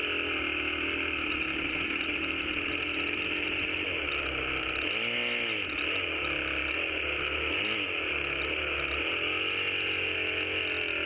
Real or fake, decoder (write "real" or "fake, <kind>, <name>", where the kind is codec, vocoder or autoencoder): real